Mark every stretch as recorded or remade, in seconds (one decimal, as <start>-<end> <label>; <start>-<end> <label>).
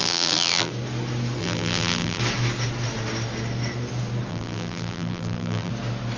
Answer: 0.0-0.7 remade; 0.7-1.4 recorded; 1.4-2.2 remade; 2.2-4.3 recorded; 4.3-5.7 remade; 5.7-6.2 recorded